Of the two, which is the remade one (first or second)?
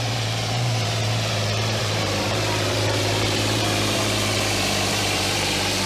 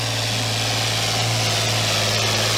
first